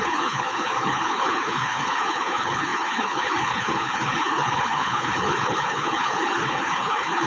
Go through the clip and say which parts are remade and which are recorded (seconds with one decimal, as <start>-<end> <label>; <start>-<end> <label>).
0.0-7.3 remade